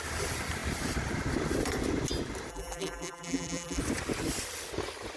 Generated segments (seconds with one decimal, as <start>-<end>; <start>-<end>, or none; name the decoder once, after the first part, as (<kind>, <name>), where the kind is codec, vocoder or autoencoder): 2.5-3.8 (vocoder, BigVGAN v2)